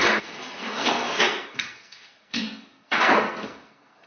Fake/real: fake